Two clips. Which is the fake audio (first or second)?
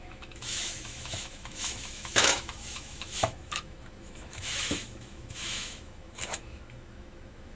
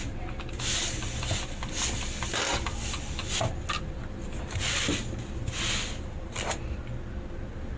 first